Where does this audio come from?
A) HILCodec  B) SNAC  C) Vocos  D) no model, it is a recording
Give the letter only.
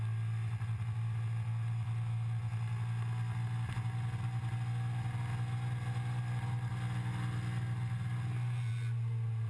D